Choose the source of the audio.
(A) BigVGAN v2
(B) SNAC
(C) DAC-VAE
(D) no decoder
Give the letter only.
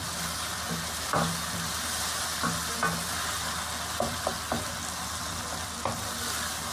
D